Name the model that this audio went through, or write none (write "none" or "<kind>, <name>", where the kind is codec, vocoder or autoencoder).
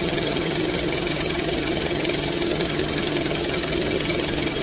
vocoder, HiFi-GAN